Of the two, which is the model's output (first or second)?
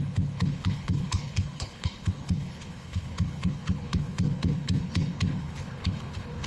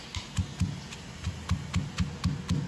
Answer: first